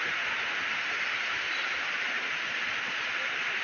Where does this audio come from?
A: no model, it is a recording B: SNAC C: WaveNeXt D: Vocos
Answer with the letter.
A